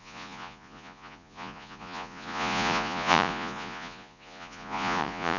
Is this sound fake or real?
fake